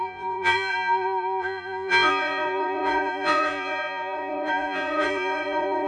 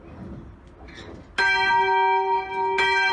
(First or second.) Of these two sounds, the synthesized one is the first